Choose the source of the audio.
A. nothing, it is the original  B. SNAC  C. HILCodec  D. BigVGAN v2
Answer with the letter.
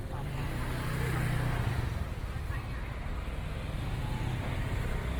A